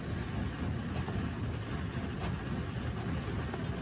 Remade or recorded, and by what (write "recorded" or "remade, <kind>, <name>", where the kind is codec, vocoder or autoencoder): recorded